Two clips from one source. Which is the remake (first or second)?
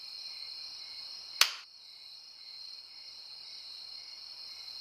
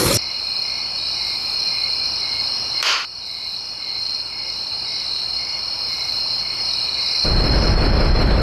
second